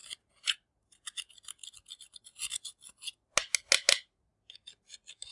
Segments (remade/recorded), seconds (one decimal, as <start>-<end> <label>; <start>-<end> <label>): 0.0-0.8 remade; 0.8-5.3 recorded